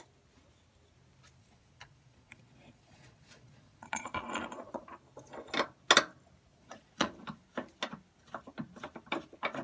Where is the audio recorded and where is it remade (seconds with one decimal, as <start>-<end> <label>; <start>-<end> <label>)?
0.0-1.4 recorded; 1.4-4.8 remade; 4.8-6.5 recorded; 6.5-7.1 remade; 7.1-9.6 recorded